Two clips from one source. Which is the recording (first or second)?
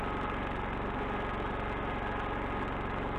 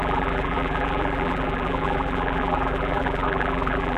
first